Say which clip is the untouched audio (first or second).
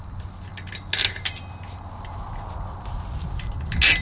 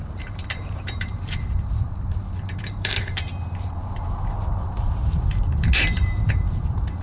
first